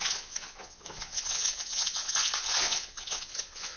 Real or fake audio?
fake